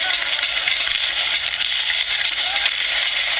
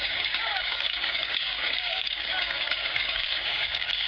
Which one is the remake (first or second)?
second